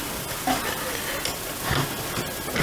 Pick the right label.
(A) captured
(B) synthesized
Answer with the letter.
A